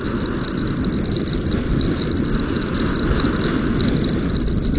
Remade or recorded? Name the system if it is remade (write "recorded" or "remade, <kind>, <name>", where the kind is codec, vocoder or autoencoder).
recorded